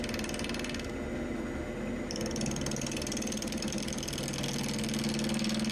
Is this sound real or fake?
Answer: real